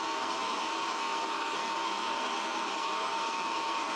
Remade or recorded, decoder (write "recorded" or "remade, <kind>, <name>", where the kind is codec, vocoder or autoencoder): remade, codec, SNAC